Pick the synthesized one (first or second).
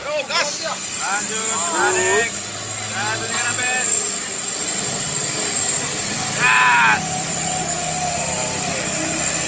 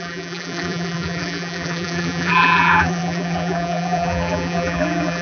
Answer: second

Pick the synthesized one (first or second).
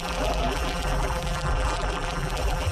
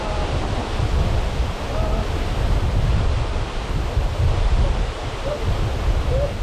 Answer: first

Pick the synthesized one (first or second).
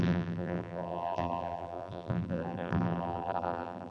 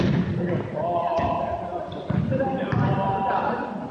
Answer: first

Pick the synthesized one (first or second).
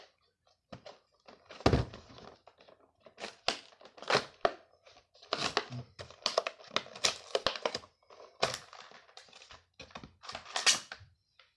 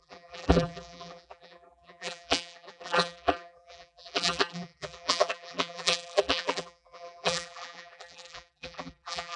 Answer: second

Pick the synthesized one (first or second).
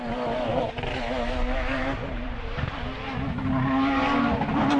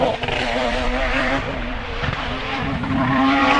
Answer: second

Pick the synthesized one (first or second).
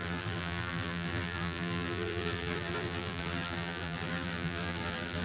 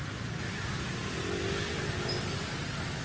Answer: first